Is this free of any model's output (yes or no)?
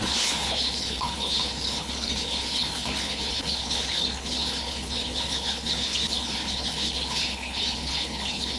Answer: no